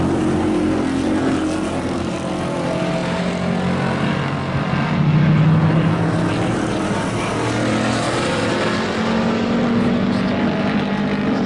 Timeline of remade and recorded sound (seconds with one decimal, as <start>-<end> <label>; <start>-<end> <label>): 0.0-11.5 recorded